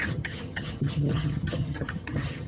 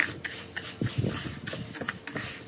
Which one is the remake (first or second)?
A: first